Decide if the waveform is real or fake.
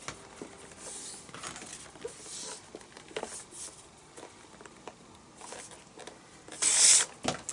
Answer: real